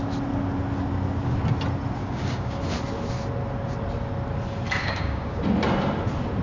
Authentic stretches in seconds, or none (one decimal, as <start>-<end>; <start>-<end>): 0.0-2.0; 2.6-4.8; 5.4-6.4